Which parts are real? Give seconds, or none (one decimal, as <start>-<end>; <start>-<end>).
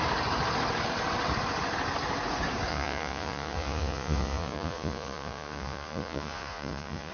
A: 0.0-2.7